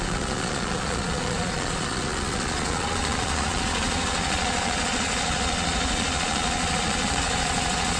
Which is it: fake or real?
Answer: fake